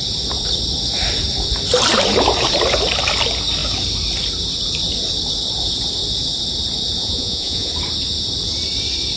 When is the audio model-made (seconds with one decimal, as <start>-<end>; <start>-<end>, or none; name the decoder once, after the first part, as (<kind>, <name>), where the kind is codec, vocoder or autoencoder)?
7.0-7.7 (vocoder, Vocos)